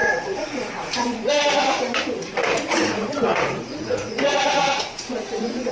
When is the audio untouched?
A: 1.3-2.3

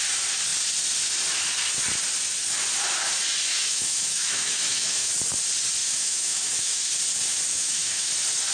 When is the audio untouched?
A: 0.0-3.5; 5.1-5.8; 6.8-7.5; 8.1-8.5

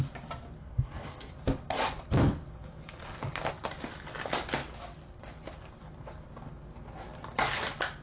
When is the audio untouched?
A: 0.0-0.6; 1.3-8.0

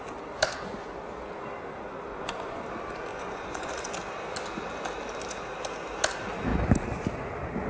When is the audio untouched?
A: 0.0-2.1; 2.6-3.1; 3.7-7.7

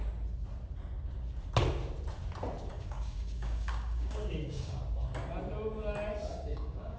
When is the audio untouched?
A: 0.0-2.7; 4.8-6.3

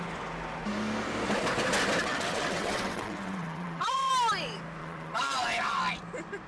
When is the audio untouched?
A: 0.0-2.0; 4.1-4.8; 5.8-6.5

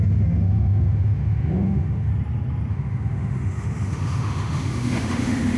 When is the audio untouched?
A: 2.1-2.7

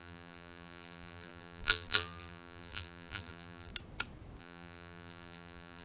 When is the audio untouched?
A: 3.7-4.4